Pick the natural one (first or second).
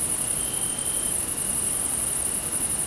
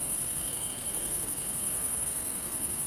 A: first